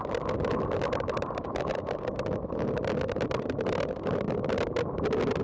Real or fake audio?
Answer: real